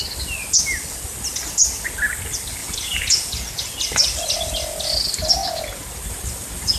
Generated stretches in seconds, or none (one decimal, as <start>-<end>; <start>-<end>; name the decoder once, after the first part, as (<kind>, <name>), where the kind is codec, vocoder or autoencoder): 2.6-3.6 (vocoder, Vocos)